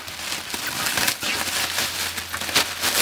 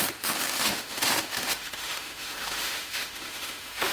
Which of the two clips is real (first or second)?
first